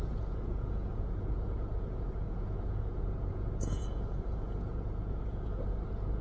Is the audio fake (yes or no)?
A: yes